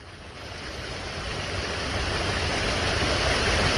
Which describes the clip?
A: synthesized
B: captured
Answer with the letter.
B